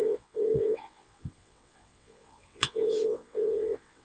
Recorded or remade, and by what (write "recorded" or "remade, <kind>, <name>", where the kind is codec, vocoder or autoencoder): remade, vocoder, WaveNeXt